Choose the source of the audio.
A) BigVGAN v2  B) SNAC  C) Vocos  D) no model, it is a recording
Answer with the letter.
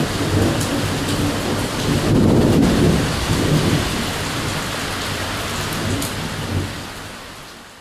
D